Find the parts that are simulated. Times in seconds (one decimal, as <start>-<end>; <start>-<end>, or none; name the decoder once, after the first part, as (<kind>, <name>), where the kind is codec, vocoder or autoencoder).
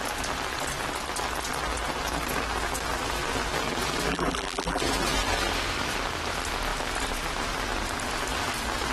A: 4.1-4.8 (vocoder, BigVGAN v2)